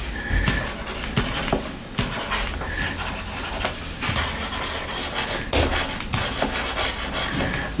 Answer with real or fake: real